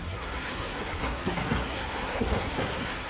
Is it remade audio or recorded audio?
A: remade